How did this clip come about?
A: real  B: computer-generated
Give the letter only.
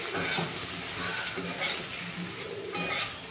A